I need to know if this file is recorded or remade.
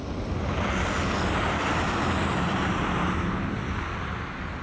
recorded